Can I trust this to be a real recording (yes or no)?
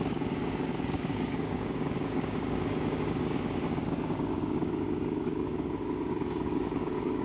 no